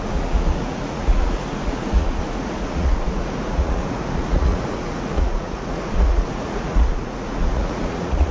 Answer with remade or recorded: remade